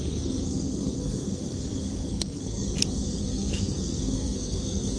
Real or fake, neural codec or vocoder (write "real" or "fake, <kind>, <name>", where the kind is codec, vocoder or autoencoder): fake, codec, SNAC